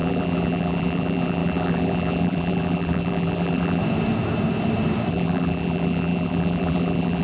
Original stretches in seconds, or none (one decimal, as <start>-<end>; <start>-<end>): 3.8-5.1

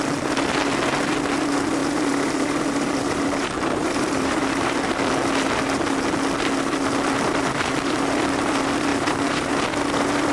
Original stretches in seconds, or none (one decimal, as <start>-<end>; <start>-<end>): 0.0-1.8; 4.9-8.9; 9.5-10.3

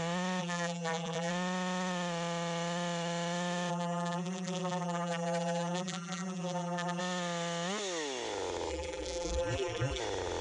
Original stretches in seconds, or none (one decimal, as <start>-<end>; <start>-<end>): 0.0-0.4; 1.3-3.7; 7.0-8.7; 10.0-10.4

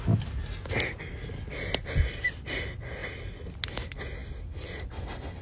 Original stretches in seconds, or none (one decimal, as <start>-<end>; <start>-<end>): 0.0-4.2